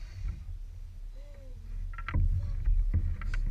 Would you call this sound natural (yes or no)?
yes